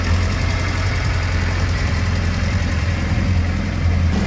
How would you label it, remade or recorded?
remade